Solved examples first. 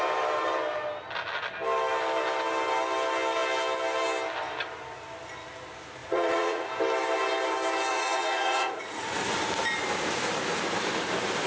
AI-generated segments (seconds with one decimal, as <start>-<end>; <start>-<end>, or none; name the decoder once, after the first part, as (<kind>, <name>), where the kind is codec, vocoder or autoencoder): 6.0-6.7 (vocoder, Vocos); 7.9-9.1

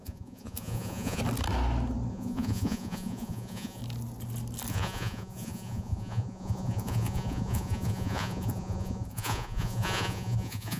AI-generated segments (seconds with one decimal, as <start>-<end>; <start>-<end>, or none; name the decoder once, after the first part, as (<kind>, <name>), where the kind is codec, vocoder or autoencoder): 0.0-1.2 (vocoder, Vocos); 2.1-3.8; 4.7-10.8

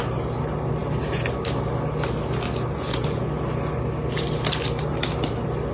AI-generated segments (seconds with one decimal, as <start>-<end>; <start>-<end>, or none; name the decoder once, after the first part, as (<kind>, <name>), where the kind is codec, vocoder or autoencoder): none